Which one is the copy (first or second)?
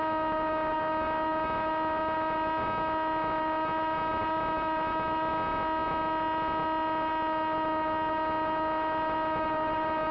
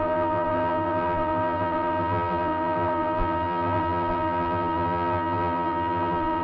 second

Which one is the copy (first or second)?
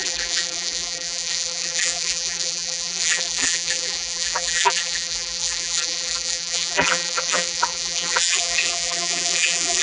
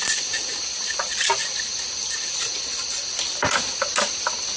first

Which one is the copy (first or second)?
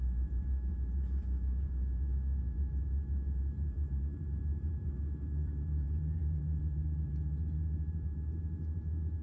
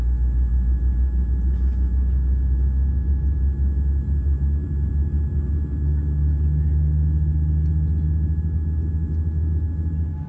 first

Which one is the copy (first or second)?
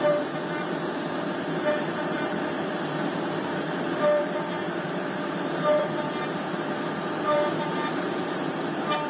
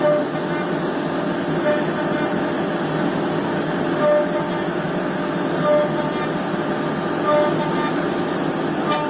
first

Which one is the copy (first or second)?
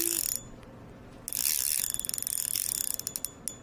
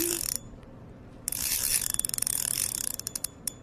second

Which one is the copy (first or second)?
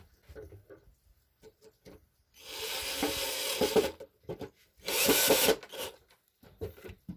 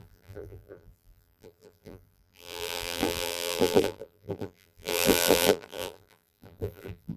second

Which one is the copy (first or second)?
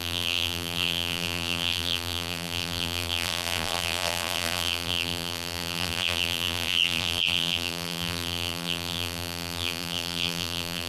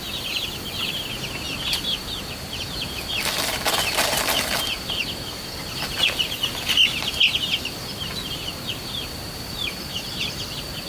first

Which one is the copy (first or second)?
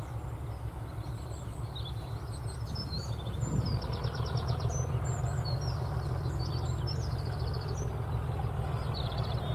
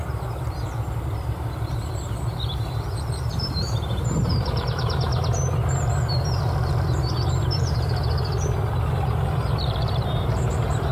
second